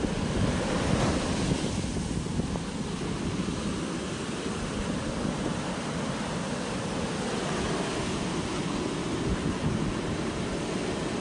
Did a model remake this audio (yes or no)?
no